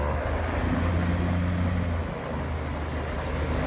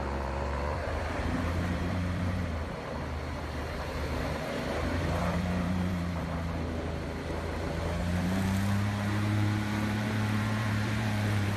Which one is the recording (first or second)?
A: first